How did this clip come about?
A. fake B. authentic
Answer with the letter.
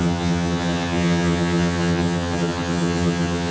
A